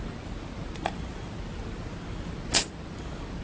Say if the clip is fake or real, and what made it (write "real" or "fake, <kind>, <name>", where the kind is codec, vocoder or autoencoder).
real